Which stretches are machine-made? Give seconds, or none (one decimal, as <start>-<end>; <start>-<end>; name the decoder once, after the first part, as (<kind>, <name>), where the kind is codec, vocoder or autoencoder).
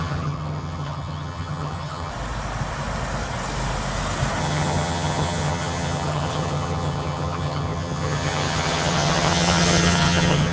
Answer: 0.0-2.1 (vocoder, HiFi-GAN); 4.4-10.5